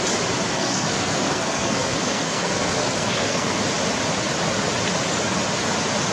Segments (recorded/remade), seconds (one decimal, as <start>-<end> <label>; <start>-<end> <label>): 0.0-0.5 recorded; 0.5-3.6 remade; 3.6-6.1 recorded

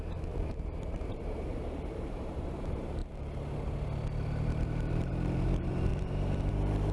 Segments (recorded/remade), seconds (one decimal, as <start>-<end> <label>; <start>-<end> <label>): 0.0-3.0 remade; 3.0-4.9 recorded; 4.9-6.9 remade

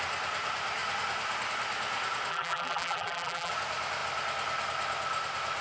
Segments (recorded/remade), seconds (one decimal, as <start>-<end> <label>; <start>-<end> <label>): 0.0-2.3 recorded; 2.3-3.5 remade; 3.5-5.6 recorded

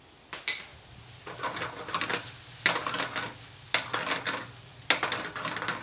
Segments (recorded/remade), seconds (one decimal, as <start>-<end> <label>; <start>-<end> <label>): 0.0-5.8 recorded

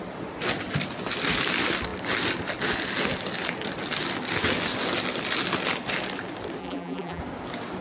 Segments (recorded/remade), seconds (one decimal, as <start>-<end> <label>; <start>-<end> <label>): 0.0-6.6 recorded; 6.6-7.2 remade; 7.2-7.8 recorded

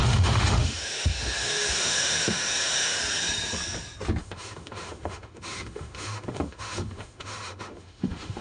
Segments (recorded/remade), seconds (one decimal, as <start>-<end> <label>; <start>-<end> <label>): 0.0-3.0 remade; 3.0-4.2 recorded; 4.2-8.4 remade

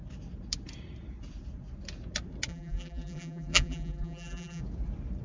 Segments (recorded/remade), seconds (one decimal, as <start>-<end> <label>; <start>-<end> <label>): 0.0-2.5 recorded; 2.5-4.6 remade; 4.6-5.2 recorded